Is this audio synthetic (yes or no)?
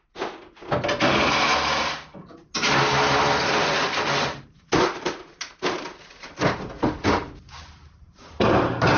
no